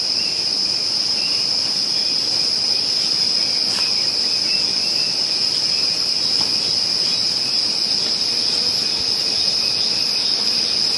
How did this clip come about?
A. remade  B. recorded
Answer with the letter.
B